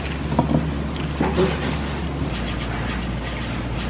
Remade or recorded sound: recorded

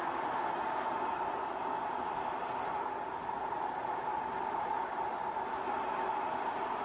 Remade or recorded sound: recorded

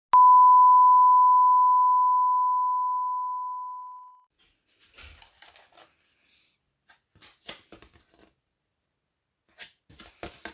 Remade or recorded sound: recorded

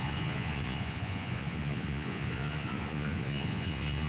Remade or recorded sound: remade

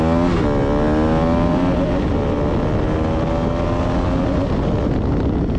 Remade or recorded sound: recorded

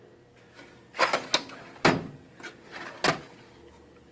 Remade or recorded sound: recorded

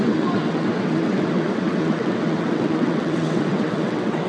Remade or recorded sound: remade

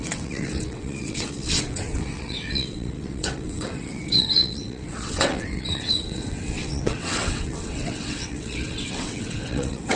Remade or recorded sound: remade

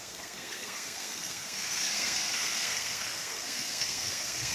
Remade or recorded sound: remade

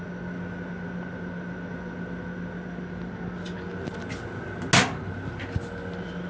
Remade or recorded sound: recorded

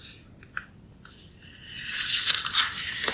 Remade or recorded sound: recorded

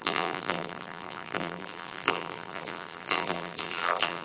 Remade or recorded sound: remade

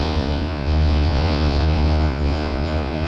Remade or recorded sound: remade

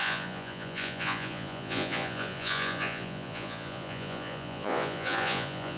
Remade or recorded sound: remade